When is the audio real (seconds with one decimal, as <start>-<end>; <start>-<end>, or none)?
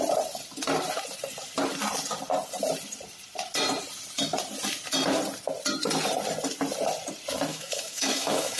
0.0-7.5